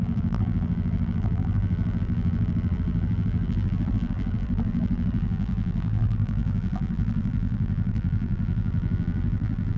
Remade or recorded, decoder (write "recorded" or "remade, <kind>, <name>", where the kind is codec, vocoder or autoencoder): remade, vocoder, BigVGAN v2